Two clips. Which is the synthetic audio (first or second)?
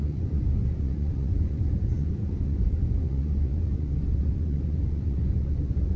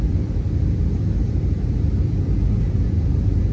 first